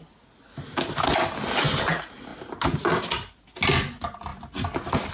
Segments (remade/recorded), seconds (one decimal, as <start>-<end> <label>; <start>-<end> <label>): 0.0-2.3 recorded; 2.3-3.4 remade; 3.4-5.1 recorded